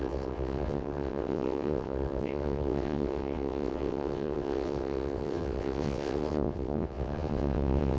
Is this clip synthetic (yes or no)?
yes